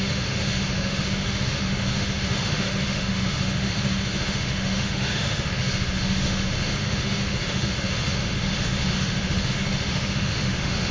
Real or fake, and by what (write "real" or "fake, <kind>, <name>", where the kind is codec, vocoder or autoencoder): fake, autoencoder, DAC-VAE